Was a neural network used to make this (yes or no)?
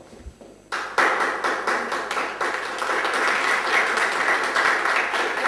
no